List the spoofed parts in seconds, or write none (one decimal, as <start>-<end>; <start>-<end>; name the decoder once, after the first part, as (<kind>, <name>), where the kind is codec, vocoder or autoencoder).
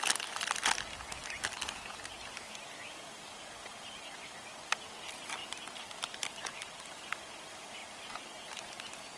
none